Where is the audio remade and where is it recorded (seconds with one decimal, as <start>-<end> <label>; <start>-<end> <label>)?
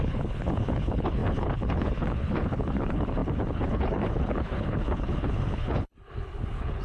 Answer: 0.0-6.8 remade